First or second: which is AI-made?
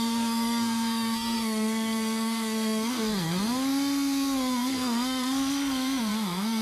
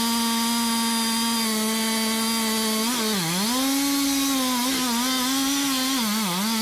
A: first